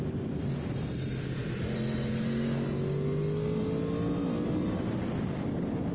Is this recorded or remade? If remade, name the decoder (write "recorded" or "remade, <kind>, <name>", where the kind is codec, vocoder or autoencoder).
recorded